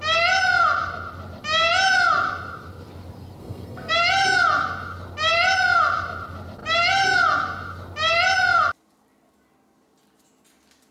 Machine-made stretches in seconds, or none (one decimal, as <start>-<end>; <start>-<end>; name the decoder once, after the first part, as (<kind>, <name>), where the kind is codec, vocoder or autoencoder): 3.4-3.9 (codec, SNAC)